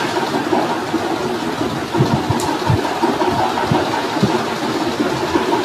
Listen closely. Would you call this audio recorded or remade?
recorded